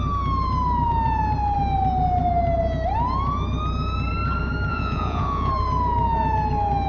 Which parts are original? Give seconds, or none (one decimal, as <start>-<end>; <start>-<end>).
0.0-4.7; 5.5-6.9